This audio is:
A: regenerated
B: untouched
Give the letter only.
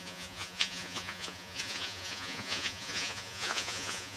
A